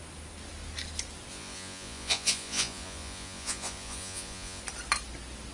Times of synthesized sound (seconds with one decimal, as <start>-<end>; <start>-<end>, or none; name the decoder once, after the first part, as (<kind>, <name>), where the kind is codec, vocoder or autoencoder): 1.3-4.6 (vocoder, Vocos)